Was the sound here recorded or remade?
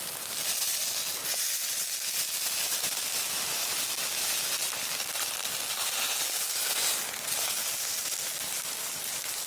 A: recorded